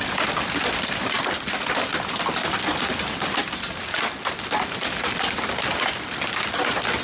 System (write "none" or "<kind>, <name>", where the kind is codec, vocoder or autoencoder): none